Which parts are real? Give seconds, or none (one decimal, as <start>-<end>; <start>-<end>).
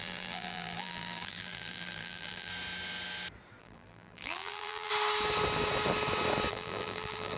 2.5-3.6; 4.9-6.5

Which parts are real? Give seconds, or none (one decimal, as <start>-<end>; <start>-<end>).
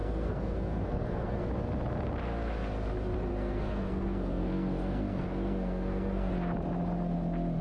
1.5-3.3; 6.3-7.6